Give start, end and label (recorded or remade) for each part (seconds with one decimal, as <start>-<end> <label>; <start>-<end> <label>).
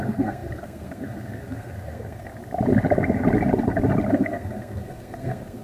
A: 0.0-2.3 remade; 2.3-4.1 recorded; 4.1-5.6 remade